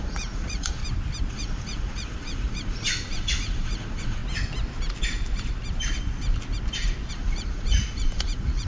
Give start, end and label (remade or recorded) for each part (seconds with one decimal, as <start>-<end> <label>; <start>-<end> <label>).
0.0-0.8 remade; 0.8-1.3 recorded; 1.3-4.2 remade; 4.2-7.1 recorded; 7.1-8.7 remade